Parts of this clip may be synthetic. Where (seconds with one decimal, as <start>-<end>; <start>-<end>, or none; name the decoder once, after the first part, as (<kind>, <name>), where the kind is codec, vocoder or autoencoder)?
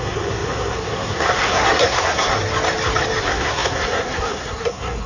0.0-2.4 (codec, SNAC); 3.2-5.1